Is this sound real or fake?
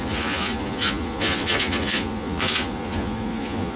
fake